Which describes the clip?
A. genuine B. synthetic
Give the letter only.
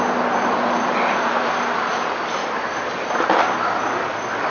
A